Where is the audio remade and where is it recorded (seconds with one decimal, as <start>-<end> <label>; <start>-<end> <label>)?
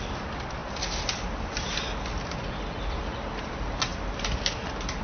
0.0-5.0 recorded